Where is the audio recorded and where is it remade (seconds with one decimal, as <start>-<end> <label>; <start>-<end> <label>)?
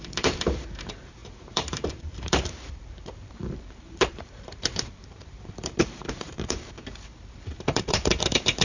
0.0-8.6 remade